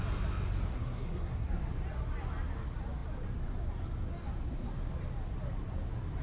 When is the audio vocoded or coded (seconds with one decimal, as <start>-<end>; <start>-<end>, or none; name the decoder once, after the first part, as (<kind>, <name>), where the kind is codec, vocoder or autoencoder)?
0.7-1.6 (codec, SNAC)